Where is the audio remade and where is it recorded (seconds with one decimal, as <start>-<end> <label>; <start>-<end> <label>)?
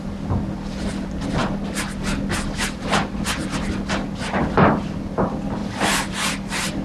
0.0-6.8 recorded